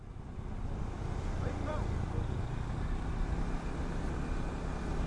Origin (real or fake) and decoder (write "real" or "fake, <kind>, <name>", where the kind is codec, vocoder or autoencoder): real